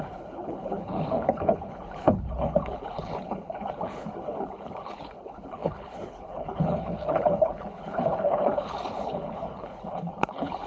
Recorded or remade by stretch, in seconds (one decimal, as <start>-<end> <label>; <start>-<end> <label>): 0.0-10.7 remade